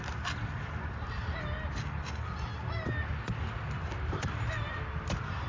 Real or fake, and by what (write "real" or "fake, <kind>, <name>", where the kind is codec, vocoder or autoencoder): real